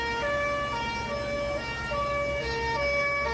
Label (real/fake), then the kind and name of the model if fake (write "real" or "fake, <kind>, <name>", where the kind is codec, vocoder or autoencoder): real